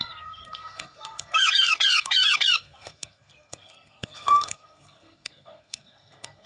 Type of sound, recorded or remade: remade